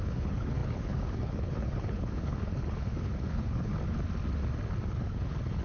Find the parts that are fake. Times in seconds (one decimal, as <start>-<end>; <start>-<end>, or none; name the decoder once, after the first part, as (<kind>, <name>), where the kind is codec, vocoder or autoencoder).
0.0-3.7 (codec, HILCodec); 4.9-5.6